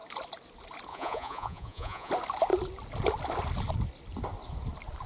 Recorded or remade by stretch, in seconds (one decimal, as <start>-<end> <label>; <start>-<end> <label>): 0.0-0.9 recorded; 0.9-2.1 remade; 2.1-5.1 recorded